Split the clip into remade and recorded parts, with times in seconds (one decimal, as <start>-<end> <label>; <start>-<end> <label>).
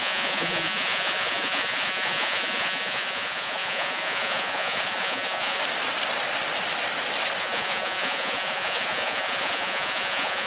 0.0-5.6 remade; 5.6-7.4 recorded; 7.4-10.5 remade